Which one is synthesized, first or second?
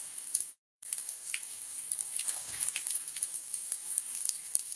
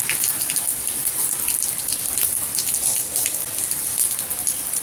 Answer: first